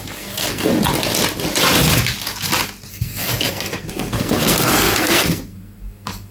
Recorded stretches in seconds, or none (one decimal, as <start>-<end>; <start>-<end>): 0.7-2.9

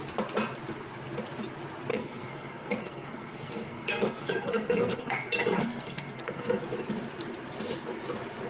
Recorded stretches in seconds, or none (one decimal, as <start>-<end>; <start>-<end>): 0.0-1.9; 6.6-8.5

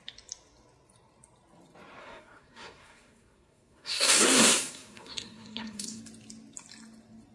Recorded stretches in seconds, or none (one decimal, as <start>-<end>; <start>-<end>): 0.0-2.0; 6.0-7.3

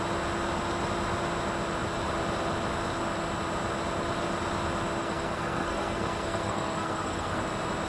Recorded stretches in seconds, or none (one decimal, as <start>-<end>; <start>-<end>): 0.0-5.0; 7.4-7.9

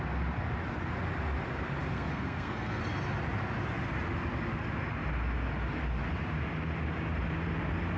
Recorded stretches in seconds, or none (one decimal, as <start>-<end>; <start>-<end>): 0.0-1.9; 2.8-8.0